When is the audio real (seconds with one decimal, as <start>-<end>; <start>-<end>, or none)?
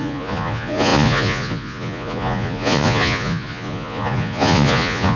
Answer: none